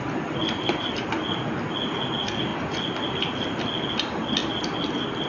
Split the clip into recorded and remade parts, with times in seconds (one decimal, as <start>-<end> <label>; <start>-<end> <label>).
0.0-5.3 recorded